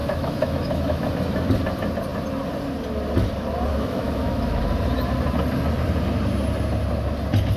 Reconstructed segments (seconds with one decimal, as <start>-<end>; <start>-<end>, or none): 0.0-1.1; 3.7-4.6